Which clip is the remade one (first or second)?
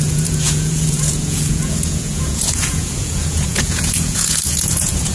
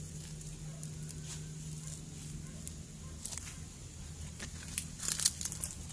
first